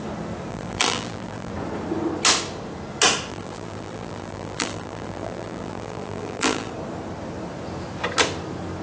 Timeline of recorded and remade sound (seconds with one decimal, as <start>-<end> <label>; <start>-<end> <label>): 0.0-0.5 recorded; 0.5-1.5 remade; 1.5-3.3 recorded; 3.3-6.7 remade; 6.7-8.8 recorded